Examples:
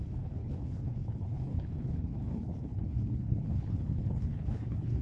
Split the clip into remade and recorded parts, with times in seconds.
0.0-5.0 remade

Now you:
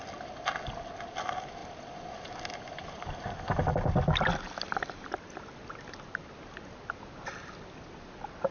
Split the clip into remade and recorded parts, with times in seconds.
0.0-8.5 recorded

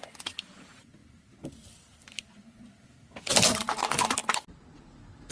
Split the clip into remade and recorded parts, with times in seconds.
0.0-5.3 recorded

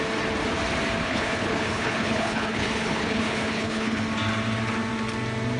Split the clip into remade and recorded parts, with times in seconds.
0.0-1.0 recorded; 1.0-4.0 remade; 4.0-5.6 recorded